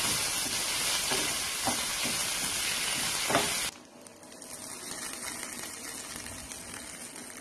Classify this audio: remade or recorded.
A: recorded